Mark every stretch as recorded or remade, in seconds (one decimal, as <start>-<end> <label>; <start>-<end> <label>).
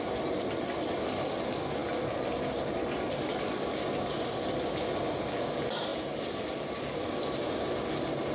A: 0.0-8.3 recorded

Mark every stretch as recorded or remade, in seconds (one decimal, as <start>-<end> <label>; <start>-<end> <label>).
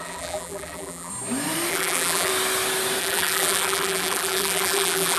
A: 0.0-1.1 remade; 1.1-1.7 recorded; 1.7-2.3 remade; 2.3-3.0 recorded; 3.0-5.2 remade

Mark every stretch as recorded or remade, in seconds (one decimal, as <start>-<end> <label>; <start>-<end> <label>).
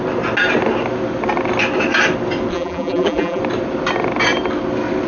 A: 0.0-2.5 recorded; 2.5-3.4 remade; 3.4-5.1 recorded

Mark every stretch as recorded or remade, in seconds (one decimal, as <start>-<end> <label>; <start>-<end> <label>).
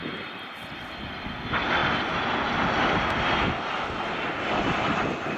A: 0.0-5.4 recorded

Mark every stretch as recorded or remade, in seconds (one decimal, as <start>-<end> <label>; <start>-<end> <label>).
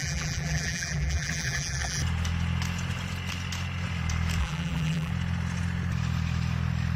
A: 0.0-2.0 remade; 2.0-4.4 recorded; 4.4-5.1 remade; 5.1-7.0 recorded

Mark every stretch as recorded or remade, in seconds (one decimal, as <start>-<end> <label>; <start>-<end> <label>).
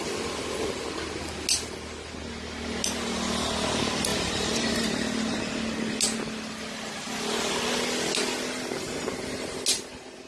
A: 0.0-4.1 recorded; 4.1-5.4 remade; 5.4-10.3 recorded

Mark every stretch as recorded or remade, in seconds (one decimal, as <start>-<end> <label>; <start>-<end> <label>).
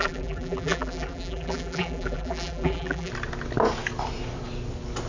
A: 0.0-3.1 remade; 3.1-5.1 recorded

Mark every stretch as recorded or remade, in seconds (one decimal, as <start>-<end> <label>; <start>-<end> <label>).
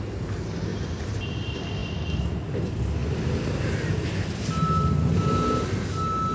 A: 0.0-0.7 recorded; 0.7-1.4 remade; 1.4-6.3 recorded